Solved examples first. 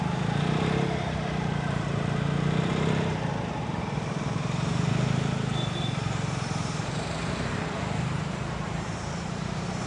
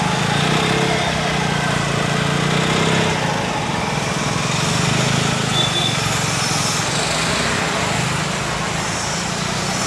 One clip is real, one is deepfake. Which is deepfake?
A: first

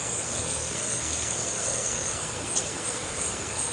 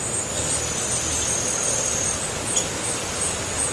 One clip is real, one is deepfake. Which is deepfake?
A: first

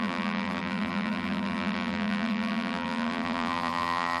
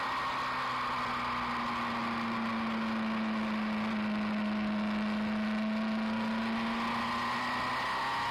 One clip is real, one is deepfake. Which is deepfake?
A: first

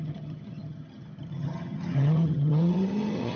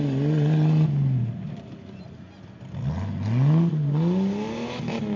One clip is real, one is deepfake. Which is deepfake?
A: first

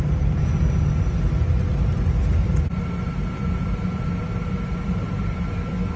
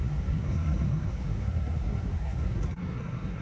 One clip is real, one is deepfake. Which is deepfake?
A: second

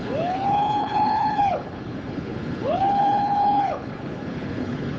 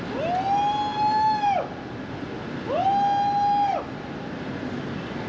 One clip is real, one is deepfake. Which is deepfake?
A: first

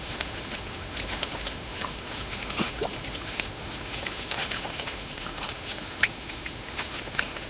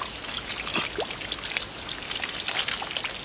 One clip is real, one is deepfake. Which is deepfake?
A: first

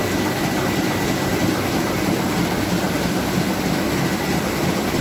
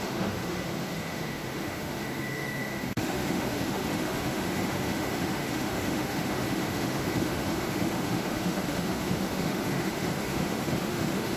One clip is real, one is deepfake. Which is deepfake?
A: second